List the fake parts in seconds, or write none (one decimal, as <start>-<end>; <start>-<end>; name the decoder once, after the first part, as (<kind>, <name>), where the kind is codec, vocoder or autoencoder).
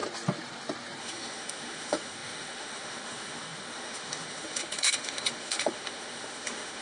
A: 1.0-6.8 (autoencoder, DAC-VAE)